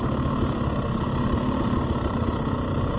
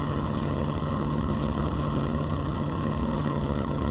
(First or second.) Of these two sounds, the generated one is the second